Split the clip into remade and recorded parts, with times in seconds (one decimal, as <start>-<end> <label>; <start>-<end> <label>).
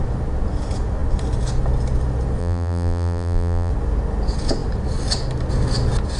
0.0-2.4 recorded; 2.4-3.7 remade; 3.7-6.2 recorded